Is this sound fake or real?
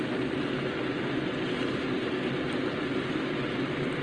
real